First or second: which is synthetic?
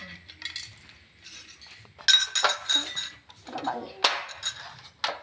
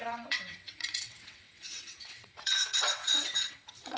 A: second